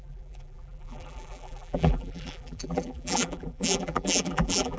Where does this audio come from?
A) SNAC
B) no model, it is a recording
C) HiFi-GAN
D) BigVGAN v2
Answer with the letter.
D